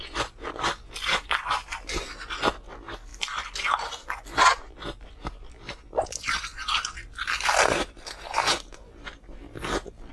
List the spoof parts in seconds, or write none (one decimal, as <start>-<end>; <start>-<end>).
none